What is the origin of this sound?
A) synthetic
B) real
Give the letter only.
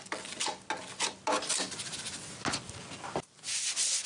B